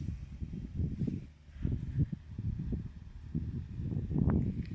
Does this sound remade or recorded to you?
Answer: recorded